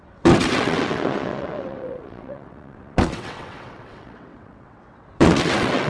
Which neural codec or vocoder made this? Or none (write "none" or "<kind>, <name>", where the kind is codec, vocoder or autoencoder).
vocoder, WaveNeXt